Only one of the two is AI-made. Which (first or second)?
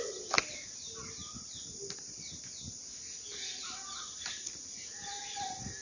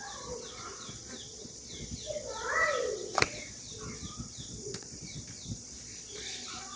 second